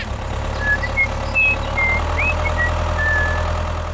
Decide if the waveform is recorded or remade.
recorded